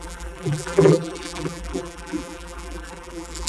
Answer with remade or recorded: remade